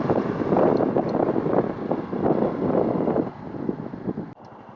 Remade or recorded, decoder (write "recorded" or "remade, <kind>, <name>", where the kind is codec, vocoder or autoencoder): recorded